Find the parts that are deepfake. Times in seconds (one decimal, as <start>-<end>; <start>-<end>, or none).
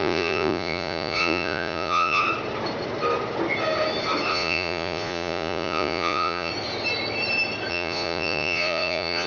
0.0-2.2; 4.3-6.5; 7.7-9.3